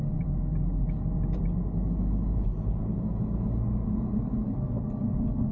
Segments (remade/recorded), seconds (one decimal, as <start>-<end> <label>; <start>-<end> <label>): 0.0-5.5 recorded